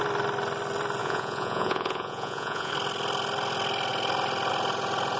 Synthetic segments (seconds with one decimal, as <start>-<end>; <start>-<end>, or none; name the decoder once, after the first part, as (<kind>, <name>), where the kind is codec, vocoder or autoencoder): 1.0-2.7 (vocoder, Vocos)